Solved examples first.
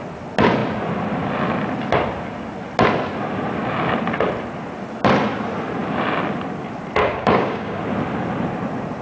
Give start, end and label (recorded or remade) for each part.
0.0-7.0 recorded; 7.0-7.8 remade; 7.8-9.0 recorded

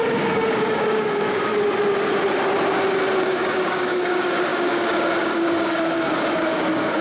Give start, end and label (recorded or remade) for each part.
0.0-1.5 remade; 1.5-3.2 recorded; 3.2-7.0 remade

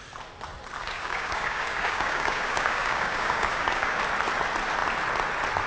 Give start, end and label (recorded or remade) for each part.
0.0-0.8 recorded; 0.8-4.0 remade; 4.0-5.7 recorded

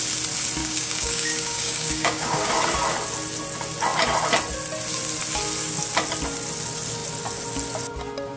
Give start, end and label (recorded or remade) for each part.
0.0-0.6 recorded; 0.6-2.5 remade; 2.5-8.4 recorded

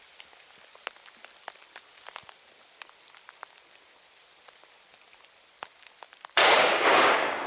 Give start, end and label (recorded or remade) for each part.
0.0-6.4 recorded; 6.4-7.5 remade

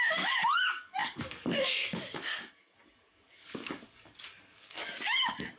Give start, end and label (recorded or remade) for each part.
0.0-5.6 remade

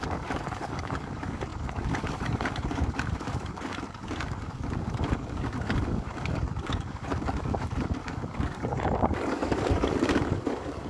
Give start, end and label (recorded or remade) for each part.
0.0-10.9 remade